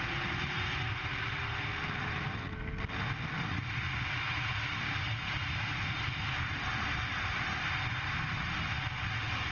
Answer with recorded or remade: recorded